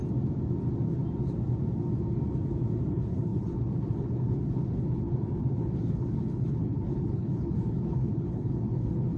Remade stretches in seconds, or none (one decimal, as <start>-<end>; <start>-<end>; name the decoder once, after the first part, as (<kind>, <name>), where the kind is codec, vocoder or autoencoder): 2.9-9.2 (codec, HILCodec)